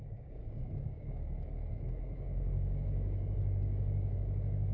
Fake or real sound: fake